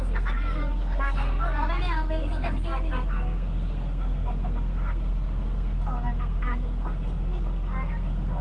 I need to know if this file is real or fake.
fake